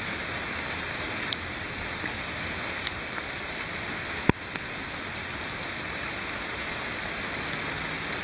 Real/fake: real